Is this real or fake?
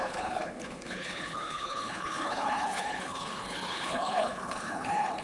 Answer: fake